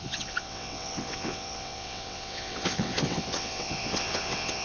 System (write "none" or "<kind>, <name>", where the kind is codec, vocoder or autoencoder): vocoder, WaveNeXt